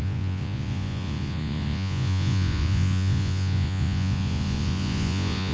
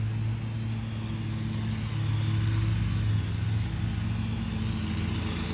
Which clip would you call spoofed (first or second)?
first